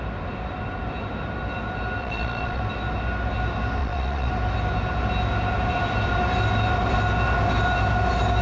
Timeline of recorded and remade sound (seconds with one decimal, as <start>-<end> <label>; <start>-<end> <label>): 0.0-2.0 recorded; 2.0-2.6 remade; 2.6-3.8 recorded; 3.8-4.3 remade; 4.3-8.4 recorded